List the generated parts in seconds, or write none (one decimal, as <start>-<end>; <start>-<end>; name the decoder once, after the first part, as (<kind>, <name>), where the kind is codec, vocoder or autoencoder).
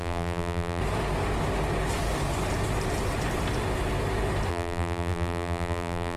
0.0-0.8 (vocoder, BigVGAN v2); 4.5-6.2